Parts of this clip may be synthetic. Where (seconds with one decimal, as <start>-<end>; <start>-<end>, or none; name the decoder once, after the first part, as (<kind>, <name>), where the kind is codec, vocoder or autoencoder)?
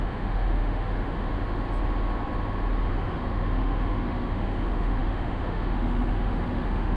0.0-1.3 (autoencoder, DAC-VAE); 2.9-7.0